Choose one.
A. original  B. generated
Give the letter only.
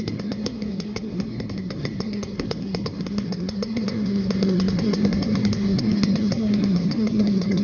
B